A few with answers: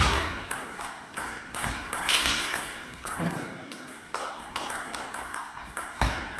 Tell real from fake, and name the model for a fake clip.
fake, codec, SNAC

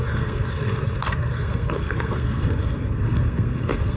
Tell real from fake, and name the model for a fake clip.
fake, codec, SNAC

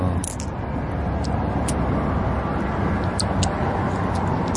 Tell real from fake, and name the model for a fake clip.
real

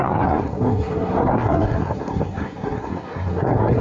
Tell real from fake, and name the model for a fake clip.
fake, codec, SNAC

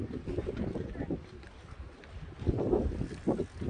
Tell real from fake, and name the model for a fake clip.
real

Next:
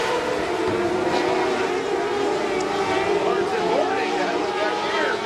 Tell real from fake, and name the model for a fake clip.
real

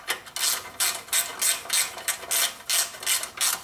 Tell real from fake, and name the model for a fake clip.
real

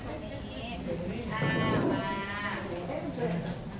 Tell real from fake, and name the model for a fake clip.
real